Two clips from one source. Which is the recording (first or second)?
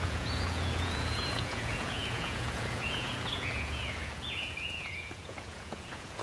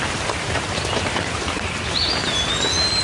second